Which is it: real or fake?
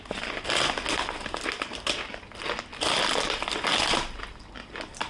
real